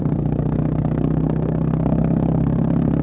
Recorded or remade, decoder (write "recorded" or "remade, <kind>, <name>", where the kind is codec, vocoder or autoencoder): remade, codec, SNAC